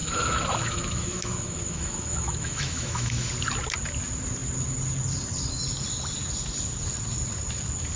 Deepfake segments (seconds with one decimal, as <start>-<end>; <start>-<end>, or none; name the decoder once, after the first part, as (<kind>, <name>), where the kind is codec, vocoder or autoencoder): 0.0-3.3 (autoencoder, DAC-VAE)